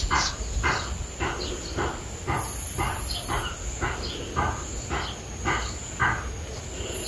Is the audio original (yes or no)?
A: yes